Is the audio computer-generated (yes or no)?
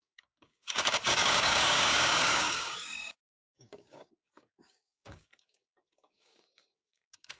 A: yes